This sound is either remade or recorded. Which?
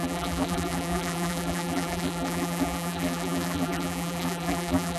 remade